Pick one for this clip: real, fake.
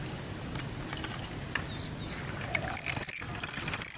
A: real